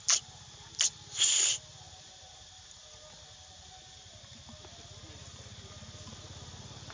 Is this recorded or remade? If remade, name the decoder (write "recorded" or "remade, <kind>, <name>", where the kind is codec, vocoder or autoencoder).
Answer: recorded